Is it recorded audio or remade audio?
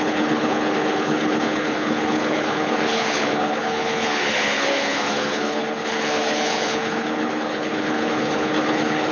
remade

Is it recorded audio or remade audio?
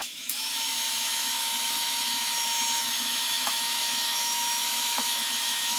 remade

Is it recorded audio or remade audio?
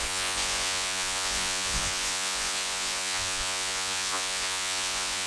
remade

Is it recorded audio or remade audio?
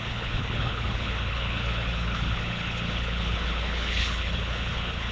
remade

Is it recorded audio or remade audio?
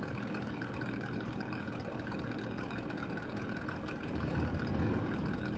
remade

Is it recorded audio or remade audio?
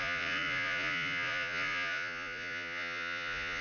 remade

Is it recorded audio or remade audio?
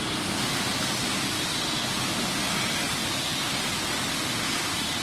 remade